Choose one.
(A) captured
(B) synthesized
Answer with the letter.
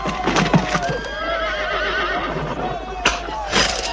B